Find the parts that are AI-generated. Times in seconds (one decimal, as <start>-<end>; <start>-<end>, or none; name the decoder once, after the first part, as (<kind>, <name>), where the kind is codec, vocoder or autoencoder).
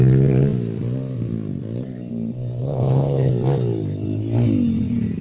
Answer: 2.6-3.3 (codec, HILCodec)